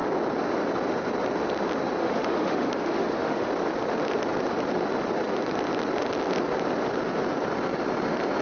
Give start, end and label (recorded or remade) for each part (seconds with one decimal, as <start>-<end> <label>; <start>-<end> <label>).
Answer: 0.0-2.0 recorded; 2.0-3.5 remade; 3.5-8.4 recorded